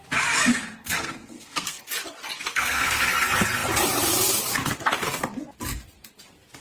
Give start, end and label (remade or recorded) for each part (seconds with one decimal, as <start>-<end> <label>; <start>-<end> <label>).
0.0-0.5 recorded; 0.5-1.8 remade; 1.8-2.5 recorded; 2.5-3.1 remade; 3.1-6.6 recorded

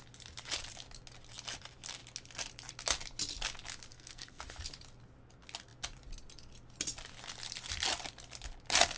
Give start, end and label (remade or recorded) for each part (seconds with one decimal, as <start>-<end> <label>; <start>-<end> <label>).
0.0-3.9 recorded; 3.9-4.4 remade; 4.4-9.0 recorded